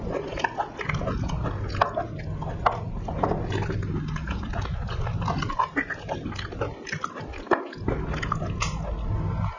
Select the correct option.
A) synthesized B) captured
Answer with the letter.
B